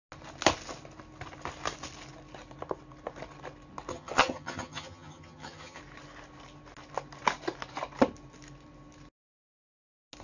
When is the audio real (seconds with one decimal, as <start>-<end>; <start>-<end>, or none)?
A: 0.0-3.9; 5.8-10.2